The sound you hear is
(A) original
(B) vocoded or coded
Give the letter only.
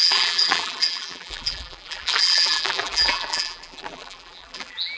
B